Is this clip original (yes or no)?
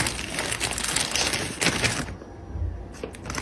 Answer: yes